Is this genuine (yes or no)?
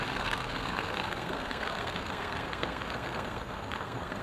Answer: no